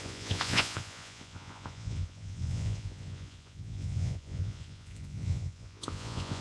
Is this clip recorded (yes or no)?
no